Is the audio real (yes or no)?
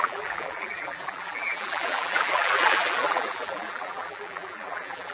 no